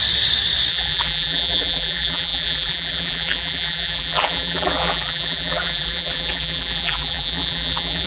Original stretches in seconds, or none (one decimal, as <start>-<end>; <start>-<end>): 0.0-0.7